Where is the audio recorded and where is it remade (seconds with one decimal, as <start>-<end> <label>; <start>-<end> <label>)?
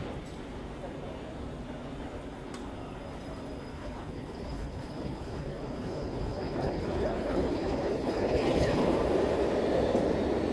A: 0.0-3.7 recorded; 3.7-8.9 remade; 8.9-10.5 recorded